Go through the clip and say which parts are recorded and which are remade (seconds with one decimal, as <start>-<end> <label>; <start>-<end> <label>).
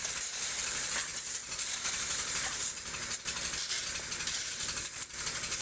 0.0-5.6 recorded